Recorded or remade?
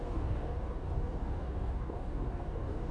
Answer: remade